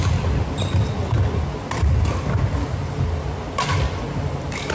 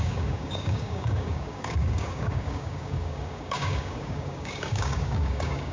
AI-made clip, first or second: second